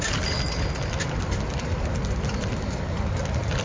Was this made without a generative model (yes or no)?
yes